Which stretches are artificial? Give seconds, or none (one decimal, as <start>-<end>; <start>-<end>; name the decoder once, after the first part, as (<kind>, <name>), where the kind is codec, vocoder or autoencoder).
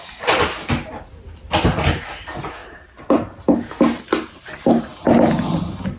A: none